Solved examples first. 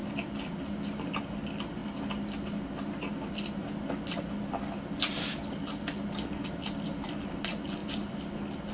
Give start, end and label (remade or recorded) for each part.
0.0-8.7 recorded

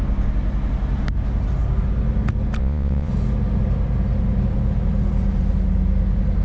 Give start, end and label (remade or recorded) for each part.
0.0-2.6 recorded; 2.6-3.1 remade; 3.1-6.4 recorded

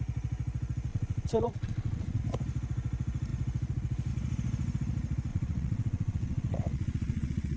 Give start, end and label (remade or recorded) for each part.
0.0-0.9 recorded; 0.9-2.2 remade; 2.2-5.3 recorded; 5.3-7.6 remade

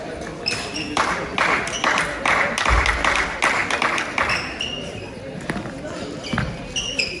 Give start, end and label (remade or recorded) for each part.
0.0-7.2 recorded

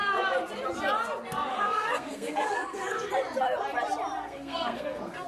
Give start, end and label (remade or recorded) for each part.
0.0-1.5 recorded; 1.5-3.1 remade; 3.1-4.2 recorded; 4.2-5.3 remade

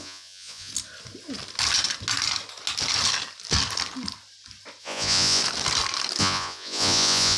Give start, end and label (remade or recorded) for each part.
0.0-0.7 remade; 0.7-4.8 recorded; 4.8-5.4 remade; 5.4-6.2 recorded; 6.2-7.4 remade

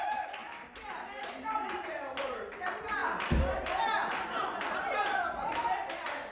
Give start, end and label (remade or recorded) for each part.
0.0-0.4 remade; 0.4-2.2 recorded; 2.2-3.0 remade; 3.0-4.7 recorded; 4.7-6.3 remade

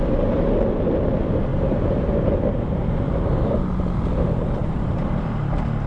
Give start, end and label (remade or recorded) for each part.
0.0-1.5 recorded; 1.5-2.3 remade; 2.3-4.6 recorded; 4.6-5.2 remade; 5.2-5.9 recorded